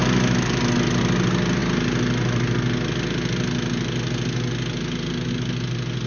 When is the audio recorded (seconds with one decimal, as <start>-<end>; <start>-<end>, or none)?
0.0-6.1